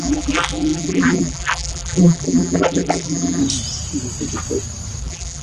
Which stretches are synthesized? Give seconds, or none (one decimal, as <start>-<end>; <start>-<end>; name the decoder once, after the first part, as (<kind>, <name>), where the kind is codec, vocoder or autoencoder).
0.0-3.4 (vocoder, BigVGAN v2); 5.0-5.4